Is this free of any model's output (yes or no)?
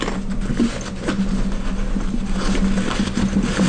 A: yes